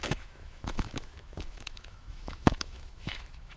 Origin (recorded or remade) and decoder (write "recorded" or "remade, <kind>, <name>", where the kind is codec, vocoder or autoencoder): remade, autoencoder, DAC-VAE